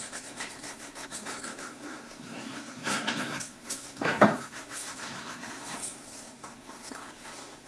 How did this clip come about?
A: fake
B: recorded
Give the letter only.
A